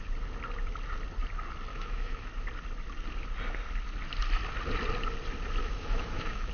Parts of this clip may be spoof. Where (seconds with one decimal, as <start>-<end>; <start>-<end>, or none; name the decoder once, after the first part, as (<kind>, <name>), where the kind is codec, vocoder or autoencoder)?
1.7-2.3 (autoencoder, DAC-VAE); 5.6-6.5